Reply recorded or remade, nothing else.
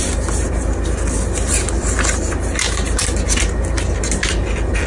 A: recorded